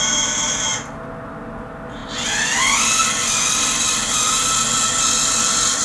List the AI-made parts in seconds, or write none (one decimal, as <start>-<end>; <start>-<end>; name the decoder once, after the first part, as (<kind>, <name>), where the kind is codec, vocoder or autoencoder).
none